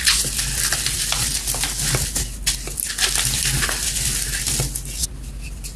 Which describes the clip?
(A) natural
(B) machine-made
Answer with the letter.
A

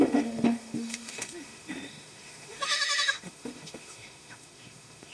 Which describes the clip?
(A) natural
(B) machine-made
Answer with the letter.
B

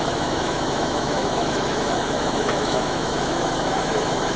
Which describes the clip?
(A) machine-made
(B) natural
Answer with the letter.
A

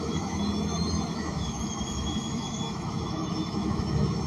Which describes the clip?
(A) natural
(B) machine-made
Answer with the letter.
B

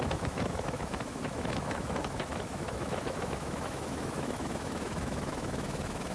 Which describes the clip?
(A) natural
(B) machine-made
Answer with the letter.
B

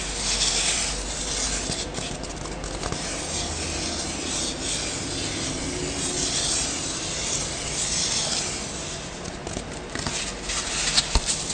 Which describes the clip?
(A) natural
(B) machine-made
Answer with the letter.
A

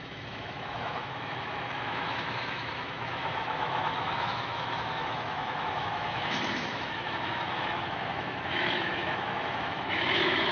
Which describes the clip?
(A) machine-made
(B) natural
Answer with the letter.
A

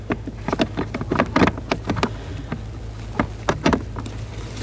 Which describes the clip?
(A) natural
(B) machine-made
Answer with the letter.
A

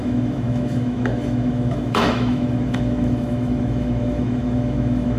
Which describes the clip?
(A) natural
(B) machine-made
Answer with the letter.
B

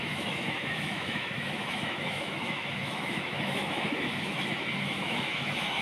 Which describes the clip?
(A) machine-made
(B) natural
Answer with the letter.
A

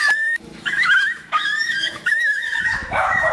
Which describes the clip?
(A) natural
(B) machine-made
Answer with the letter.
B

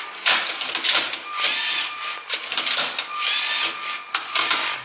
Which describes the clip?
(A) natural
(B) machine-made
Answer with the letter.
A